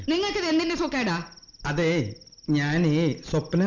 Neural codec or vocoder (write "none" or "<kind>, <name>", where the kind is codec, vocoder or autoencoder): none